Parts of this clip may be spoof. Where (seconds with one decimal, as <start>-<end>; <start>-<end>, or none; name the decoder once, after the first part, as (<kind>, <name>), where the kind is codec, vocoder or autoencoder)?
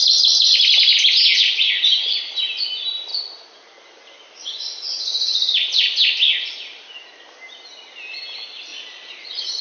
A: 8.7-9.6 (vocoder, Vocos)